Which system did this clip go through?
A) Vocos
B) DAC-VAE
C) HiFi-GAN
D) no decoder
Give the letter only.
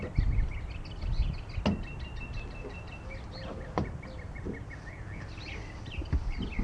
D